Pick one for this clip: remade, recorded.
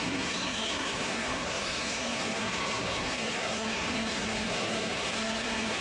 remade